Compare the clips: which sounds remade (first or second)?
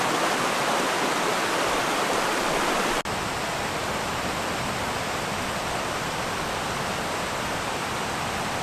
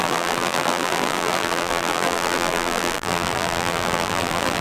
second